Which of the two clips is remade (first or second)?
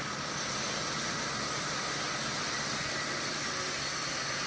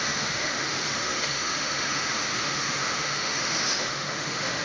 second